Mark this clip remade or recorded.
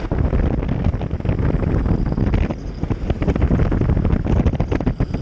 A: recorded